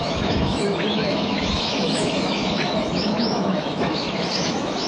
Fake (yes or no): yes